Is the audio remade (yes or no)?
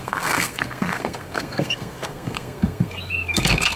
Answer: yes